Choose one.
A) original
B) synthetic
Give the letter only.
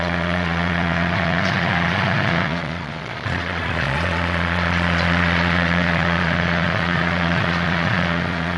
B